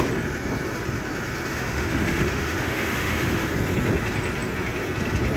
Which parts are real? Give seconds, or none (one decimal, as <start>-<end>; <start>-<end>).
0.0-1.5; 3.5-5.4